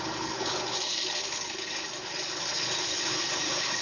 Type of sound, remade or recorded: remade